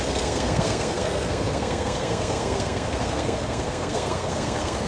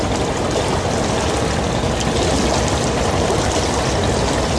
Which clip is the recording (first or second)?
second